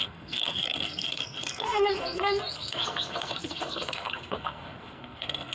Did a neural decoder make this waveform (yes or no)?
yes